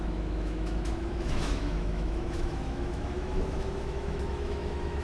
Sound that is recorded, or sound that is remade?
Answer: remade